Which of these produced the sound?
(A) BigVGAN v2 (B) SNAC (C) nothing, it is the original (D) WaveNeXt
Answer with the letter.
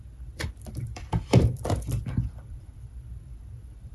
A